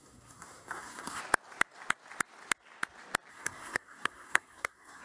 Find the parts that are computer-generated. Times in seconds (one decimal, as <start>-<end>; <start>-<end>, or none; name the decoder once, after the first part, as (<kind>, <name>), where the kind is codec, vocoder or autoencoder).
0.0-1.2 (codec, SNAC); 3.3-5.0